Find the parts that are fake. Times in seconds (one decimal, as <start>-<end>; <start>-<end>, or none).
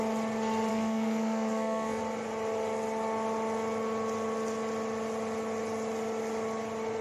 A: 0.7-2.0